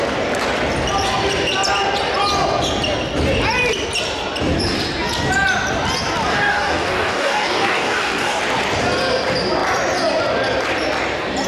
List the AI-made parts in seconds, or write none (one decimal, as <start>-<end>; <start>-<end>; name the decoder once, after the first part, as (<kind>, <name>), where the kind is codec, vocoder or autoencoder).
6.3-8.4 (codec, DAC)